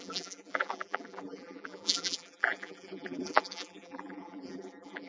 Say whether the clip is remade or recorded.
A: remade